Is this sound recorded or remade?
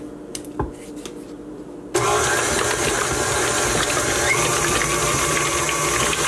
recorded